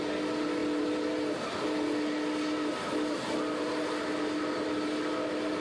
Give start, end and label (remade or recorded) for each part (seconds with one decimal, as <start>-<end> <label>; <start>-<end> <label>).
0.0-5.6 recorded